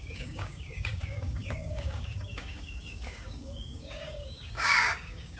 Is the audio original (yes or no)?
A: no